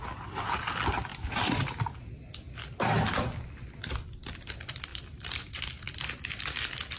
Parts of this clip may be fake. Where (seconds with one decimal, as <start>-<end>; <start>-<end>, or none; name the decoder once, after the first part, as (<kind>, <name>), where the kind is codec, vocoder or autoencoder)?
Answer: 4.9-5.9 (vocoder, BigVGAN v2)